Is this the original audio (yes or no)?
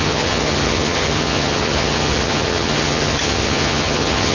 no